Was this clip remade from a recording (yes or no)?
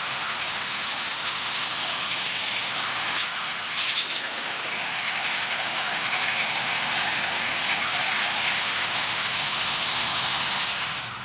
yes